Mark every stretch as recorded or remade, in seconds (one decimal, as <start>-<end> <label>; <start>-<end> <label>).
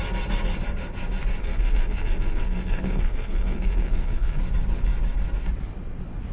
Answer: 0.0-1.4 recorded; 1.4-4.4 remade; 4.4-6.3 recorded